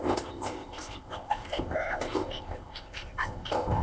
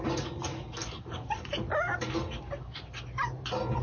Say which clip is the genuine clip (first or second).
second